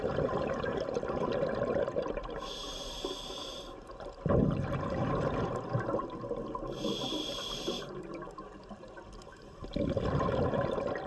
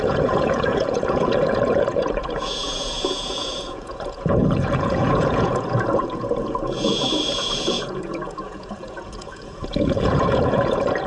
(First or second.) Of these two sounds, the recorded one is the first